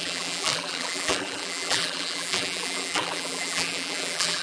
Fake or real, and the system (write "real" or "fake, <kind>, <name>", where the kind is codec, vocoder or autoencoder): fake, vocoder, BigVGAN v2